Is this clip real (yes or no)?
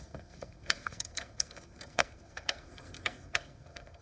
no